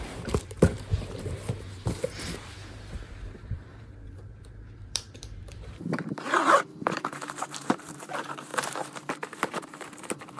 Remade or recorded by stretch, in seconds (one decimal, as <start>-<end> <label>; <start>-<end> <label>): 0.0-10.4 remade